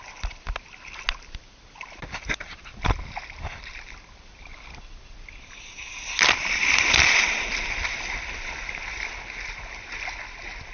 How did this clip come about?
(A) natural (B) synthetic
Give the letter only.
A